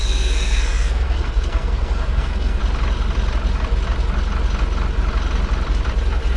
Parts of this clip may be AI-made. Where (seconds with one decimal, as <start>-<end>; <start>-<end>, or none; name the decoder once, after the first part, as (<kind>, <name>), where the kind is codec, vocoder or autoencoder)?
0.0-2.6 (codec, SNAC)